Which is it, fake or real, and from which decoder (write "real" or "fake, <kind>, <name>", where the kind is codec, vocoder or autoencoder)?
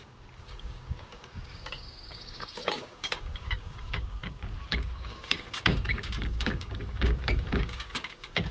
fake, codec, DAC